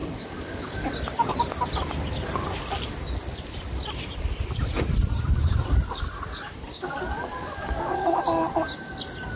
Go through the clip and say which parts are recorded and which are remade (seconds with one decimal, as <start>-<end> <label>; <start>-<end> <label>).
0.0-0.9 remade; 0.9-6.7 recorded; 6.7-8.2 remade; 8.2-9.4 recorded